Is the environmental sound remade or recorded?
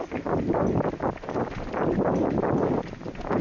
recorded